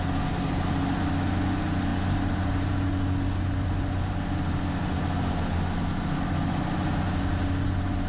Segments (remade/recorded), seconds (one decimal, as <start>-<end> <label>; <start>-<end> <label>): 0.0-8.1 recorded